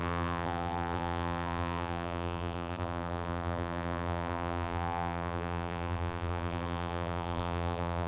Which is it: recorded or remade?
remade